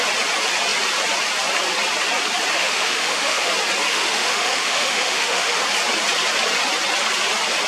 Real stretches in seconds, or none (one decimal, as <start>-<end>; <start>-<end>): 0.0-2.5; 3.5-3.9; 5.6-7.7